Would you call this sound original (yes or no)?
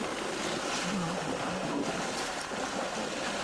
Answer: yes